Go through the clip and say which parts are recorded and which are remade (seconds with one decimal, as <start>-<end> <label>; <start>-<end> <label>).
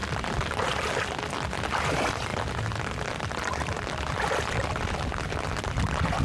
0.0-6.2 recorded